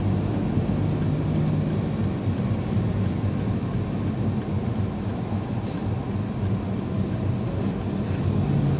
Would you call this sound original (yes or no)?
yes